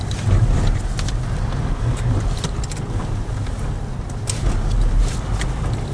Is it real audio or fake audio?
real